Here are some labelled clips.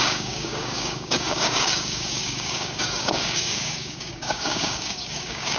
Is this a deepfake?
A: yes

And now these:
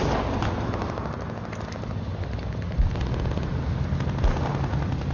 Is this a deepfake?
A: no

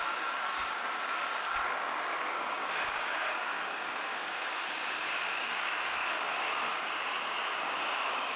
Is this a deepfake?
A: yes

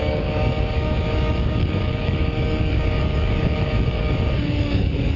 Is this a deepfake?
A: yes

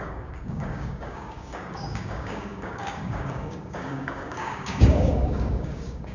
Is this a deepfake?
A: yes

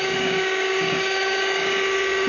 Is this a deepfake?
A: yes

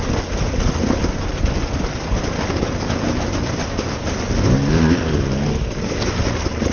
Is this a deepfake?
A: no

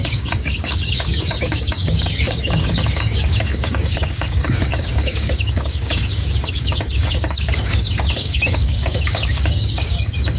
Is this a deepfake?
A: yes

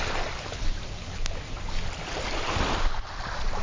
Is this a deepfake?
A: no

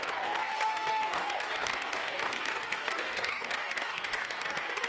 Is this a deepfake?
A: yes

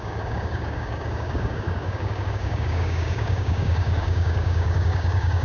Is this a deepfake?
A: yes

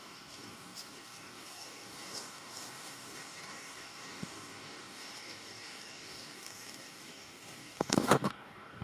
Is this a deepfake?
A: yes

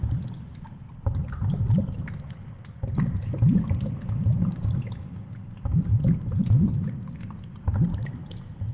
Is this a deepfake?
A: no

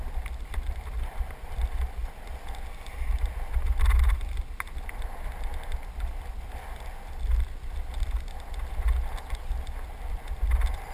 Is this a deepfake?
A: no